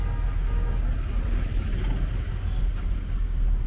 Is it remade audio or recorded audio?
recorded